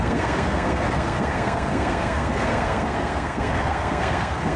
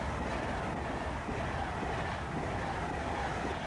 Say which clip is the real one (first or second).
second